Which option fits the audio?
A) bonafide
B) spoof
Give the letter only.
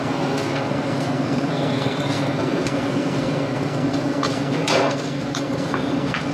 B